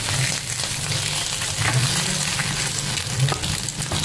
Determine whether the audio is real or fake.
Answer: real